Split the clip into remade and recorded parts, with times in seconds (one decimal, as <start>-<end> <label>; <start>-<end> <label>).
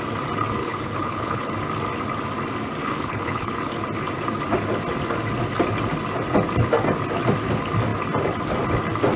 0.0-0.6 recorded; 0.6-1.5 remade; 1.5-2.8 recorded; 2.8-3.5 remade; 3.5-9.2 recorded